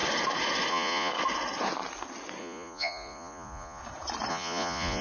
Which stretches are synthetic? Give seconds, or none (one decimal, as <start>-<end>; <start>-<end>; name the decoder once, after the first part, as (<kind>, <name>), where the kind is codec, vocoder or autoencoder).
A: 0.7-1.1 (vocoder, Vocos); 2.4-3.8; 4.3-5.0

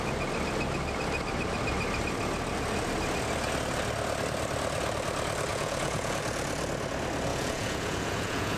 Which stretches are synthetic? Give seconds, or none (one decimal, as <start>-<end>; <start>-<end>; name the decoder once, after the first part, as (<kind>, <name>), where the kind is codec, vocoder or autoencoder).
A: 5.5-6.2 (vocoder, Vocos); 7.3-8.6